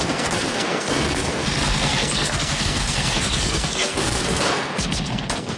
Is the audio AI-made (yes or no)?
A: yes